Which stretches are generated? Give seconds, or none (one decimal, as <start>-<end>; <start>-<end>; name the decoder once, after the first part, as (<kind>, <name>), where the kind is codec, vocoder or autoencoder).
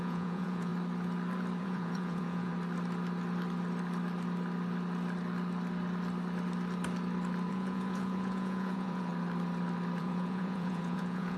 0.0-0.7 (vocoder, Vocos); 1.6-2.5; 7.5-9.1; 10.0-11.4